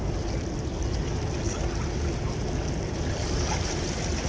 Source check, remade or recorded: recorded